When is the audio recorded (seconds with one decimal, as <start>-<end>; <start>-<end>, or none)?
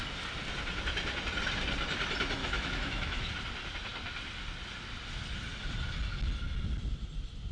0.0-2.4; 3.3-7.5